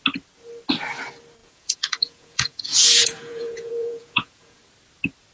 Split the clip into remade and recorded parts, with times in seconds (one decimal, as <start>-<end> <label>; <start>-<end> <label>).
0.0-1.4 recorded; 1.4-4.6 remade; 4.6-5.3 recorded